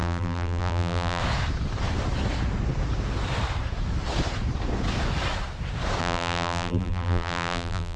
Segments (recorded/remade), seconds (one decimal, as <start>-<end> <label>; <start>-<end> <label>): 0.0-1.2 remade; 1.2-6.0 recorded; 6.0-8.0 remade